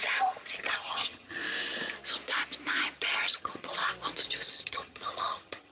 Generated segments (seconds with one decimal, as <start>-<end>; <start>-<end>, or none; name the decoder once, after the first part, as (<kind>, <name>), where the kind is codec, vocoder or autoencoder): 0.0-1.4 (vocoder, HiFi-GAN); 3.0-3.8; 4.5-5.7